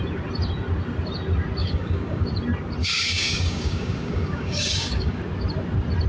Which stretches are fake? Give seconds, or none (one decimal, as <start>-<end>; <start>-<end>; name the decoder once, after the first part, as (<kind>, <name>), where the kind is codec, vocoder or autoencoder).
1.6-2.2 (codec, DAC); 2.8-5.2